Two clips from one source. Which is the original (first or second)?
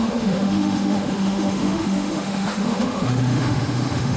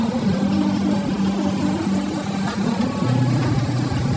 second